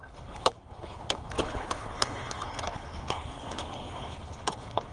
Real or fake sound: fake